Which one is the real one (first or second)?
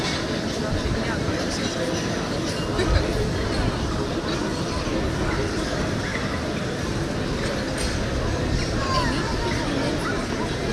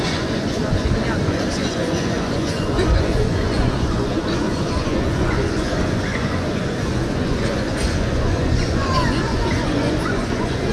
first